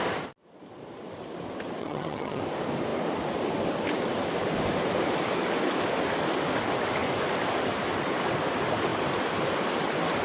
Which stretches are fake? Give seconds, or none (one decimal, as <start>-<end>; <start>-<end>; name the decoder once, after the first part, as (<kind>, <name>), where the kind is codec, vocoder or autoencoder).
1.8-2.4 (vocoder, HiFi-GAN)